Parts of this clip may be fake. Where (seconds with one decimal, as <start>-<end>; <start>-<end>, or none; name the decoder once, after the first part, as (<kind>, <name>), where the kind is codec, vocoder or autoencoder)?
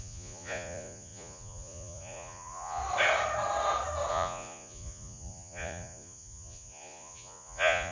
0.0-2.8 (vocoder, Vocos); 4.1-7.9